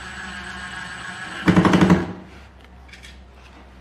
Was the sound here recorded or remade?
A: recorded